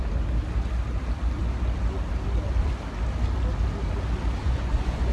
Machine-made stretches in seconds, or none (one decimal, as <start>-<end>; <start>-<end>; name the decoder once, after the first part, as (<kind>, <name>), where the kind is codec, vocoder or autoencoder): 4.4-5.1 (vocoder, Vocos)